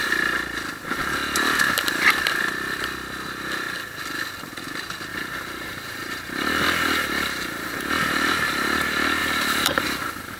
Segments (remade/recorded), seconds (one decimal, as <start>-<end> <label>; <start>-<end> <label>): 0.0-5.1 recorded; 5.1-7.9 remade; 7.9-9.2 recorded; 9.2-10.4 remade